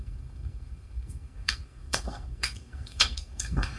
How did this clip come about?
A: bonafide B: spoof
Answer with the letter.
B